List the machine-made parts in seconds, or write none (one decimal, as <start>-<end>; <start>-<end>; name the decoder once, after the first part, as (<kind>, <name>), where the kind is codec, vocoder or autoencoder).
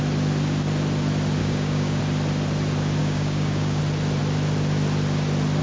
1.4-2.0 (codec, DAC); 3.0-3.8